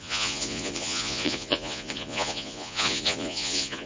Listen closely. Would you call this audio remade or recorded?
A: remade